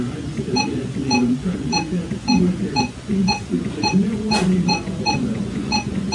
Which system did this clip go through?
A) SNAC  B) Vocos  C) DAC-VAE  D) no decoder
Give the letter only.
B